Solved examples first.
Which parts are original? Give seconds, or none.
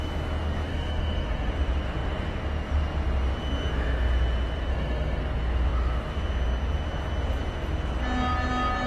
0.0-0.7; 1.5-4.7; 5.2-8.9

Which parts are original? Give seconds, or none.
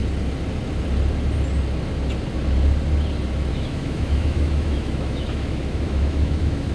0.0-3.5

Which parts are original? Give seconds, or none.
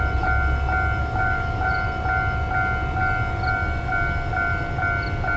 0.0-1.0; 1.7-5.4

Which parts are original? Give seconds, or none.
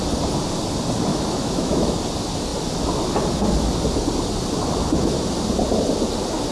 0.0-1.1; 2.0-6.5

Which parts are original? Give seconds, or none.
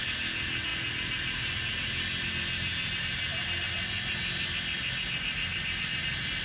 0.0-6.4